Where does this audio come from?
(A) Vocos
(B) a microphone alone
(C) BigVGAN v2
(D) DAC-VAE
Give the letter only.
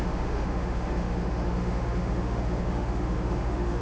D